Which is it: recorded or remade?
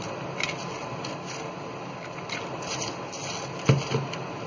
recorded